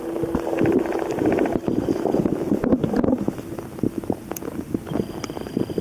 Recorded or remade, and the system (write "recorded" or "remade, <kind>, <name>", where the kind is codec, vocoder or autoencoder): recorded